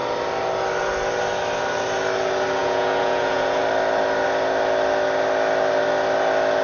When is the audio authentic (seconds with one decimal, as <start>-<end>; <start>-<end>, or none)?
0.0-2.6; 3.6-6.6